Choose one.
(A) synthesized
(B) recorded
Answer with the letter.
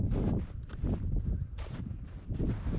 A